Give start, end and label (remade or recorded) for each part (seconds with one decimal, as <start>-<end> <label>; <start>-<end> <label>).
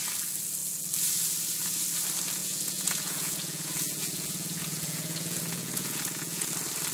0.0-2.4 recorded; 2.4-6.5 remade; 6.5-6.9 recorded